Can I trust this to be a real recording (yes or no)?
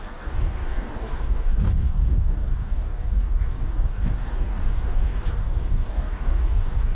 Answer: no